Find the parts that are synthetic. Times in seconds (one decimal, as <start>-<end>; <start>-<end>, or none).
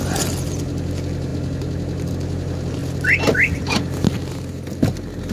none